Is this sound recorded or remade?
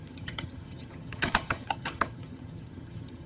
remade